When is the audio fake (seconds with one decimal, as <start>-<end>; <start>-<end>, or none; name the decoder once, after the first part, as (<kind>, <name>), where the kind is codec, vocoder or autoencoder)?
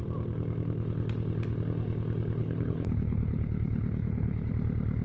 2.4-4.5 (codec, HILCodec)